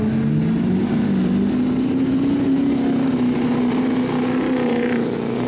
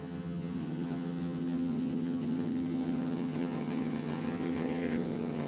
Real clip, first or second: first